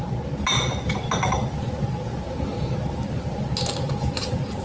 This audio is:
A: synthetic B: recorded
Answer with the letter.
B